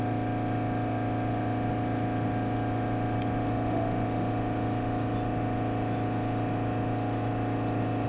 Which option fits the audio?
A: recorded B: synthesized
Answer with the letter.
A